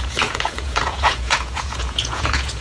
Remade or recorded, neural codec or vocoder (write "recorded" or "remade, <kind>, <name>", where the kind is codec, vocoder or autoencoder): remade, vocoder, Vocos